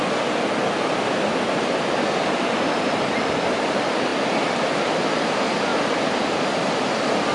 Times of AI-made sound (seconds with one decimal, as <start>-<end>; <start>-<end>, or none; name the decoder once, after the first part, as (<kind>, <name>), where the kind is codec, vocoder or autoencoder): 0.6-3.4 (vocoder, BigVGAN v2); 5.7-6.4